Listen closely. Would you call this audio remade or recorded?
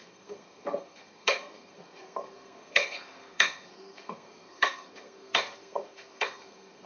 remade